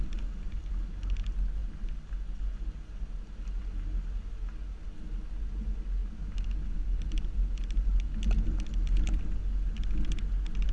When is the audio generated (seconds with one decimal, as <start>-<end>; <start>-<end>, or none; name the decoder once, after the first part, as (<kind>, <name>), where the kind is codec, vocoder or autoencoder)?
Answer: none